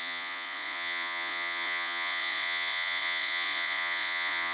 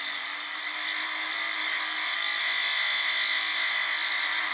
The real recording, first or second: second